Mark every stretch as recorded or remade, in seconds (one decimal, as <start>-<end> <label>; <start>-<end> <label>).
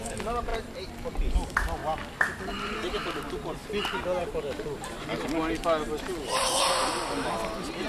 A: 0.0-7.9 recorded